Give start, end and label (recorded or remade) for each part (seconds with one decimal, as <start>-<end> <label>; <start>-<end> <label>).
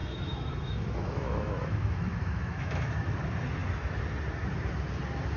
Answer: 0.0-3.2 remade; 3.2-5.4 recorded